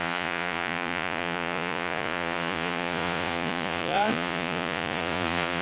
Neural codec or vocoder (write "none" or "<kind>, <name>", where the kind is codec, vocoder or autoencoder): vocoder, Vocos